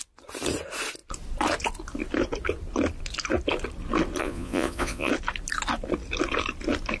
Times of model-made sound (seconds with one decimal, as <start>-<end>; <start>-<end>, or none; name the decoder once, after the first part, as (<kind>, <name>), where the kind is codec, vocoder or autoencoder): 4.2-5.1 (vocoder, Vocos)